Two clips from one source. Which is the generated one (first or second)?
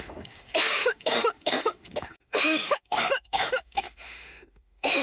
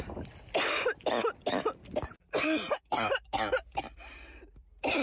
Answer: first